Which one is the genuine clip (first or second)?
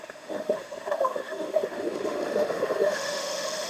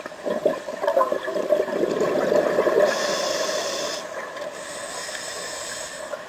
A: second